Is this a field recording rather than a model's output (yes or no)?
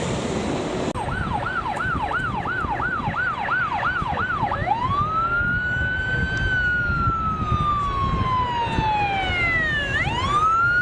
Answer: yes